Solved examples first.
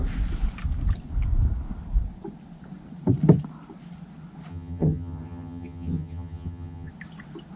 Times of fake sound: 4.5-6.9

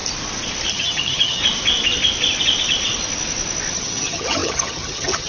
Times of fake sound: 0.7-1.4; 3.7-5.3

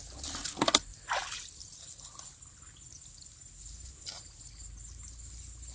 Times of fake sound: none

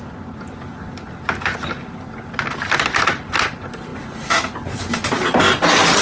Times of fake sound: none

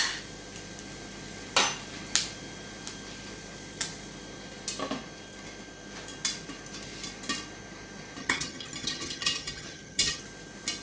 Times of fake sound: 8.2-10.2

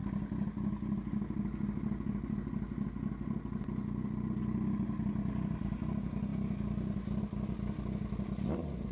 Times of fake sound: none